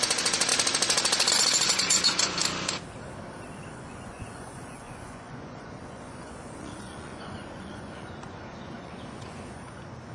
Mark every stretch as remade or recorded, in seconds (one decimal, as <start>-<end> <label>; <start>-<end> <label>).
0.0-0.5 remade; 0.5-1.3 recorded; 1.3-2.4 remade; 2.4-3.7 recorded; 3.7-10.1 remade